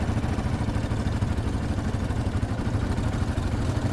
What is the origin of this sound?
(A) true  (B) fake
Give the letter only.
A